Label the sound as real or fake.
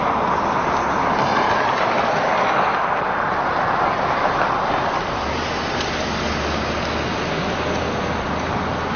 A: real